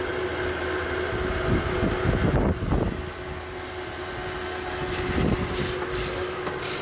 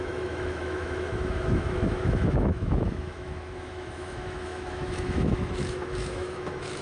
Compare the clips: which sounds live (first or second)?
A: first